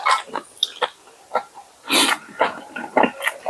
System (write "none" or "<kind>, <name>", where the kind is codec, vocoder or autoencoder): none